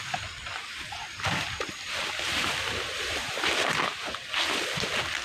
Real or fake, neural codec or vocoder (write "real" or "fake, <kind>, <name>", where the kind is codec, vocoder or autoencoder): real